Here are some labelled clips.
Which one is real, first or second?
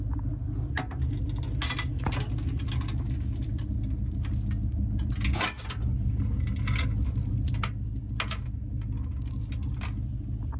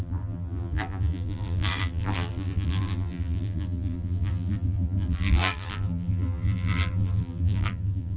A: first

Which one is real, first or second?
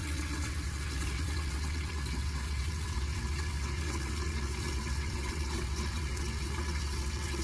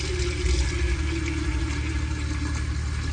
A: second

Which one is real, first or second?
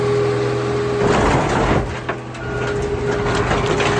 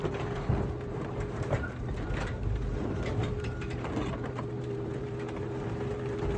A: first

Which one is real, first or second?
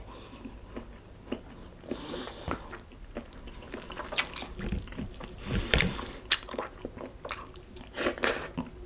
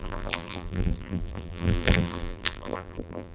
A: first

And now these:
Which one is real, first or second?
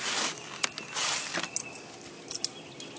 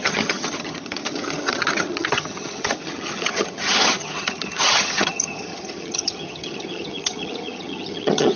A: first